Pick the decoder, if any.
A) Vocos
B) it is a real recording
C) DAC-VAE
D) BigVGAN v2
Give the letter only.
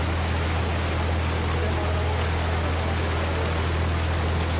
B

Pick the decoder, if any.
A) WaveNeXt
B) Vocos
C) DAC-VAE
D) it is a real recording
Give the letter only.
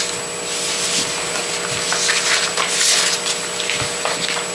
D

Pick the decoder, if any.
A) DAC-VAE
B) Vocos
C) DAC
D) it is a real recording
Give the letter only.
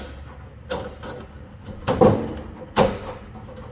D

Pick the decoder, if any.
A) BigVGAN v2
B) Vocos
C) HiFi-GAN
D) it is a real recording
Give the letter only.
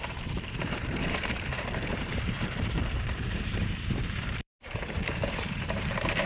A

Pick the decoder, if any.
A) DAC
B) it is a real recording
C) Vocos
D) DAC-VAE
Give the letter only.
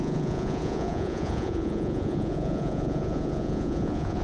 C